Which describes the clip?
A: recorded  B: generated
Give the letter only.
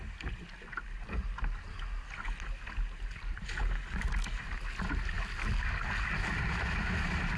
A